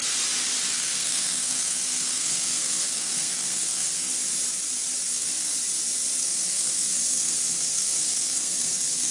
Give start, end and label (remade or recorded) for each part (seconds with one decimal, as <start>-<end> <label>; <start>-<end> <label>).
0.0-0.7 recorded; 0.7-4.1 remade; 4.1-5.1 recorded; 5.1-5.5 remade; 5.5-6.2 recorded; 6.2-9.1 remade